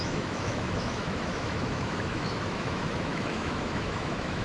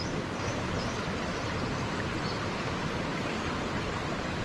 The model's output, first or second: first